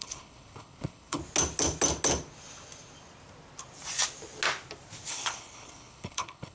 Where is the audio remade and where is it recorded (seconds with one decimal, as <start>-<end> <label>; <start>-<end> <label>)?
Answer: 0.0-1.2 remade; 1.2-5.1 recorded; 5.1-6.5 remade